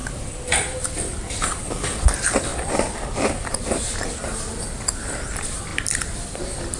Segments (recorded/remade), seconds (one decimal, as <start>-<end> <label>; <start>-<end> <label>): 0.0-1.5 recorded; 1.5-5.7 remade; 5.7-6.3 recorded; 6.3-6.8 remade